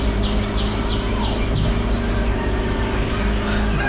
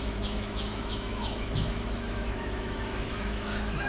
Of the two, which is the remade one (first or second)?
second